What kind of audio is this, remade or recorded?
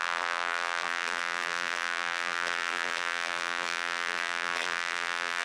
remade